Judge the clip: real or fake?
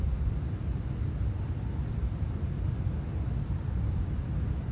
real